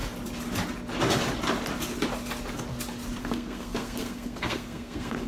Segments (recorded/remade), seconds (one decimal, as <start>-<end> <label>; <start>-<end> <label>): 0.0-3.2 recorded; 3.2-5.3 remade